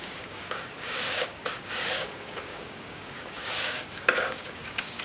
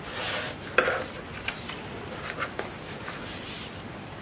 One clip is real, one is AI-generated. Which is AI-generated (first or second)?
first